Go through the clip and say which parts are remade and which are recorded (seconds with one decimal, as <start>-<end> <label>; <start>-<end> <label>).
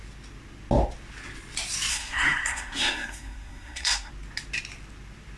0.0-1.9 recorded; 1.9-4.1 remade; 4.1-5.4 recorded